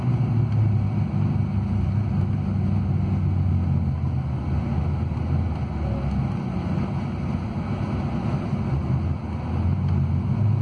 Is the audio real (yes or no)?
yes